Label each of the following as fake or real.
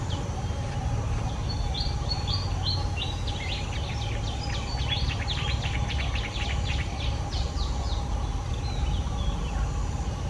real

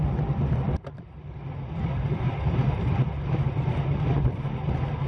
real